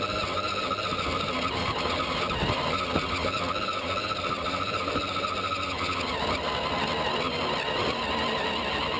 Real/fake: real